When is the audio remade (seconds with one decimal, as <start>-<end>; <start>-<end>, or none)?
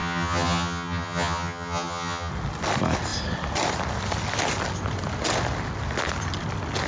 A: 0.0-2.3